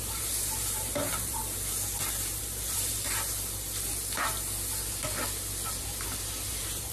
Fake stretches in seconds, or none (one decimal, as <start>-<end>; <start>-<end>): 0.0-1.4; 2.4-2.9; 6.5-6.9

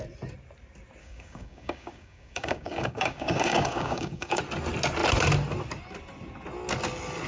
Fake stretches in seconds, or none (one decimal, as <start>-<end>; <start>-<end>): 1.0-4.4

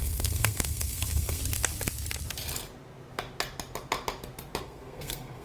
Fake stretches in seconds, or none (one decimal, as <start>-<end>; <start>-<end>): 0.0-1.4; 4.6-5.4

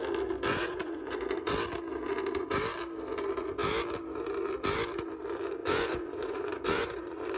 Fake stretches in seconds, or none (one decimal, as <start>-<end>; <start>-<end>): 0.5-1.5; 5.6-7.4

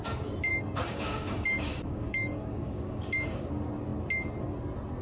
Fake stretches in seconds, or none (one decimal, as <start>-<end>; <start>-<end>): 0.5-3.5